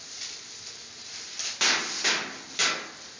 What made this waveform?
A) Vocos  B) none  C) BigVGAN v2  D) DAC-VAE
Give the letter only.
B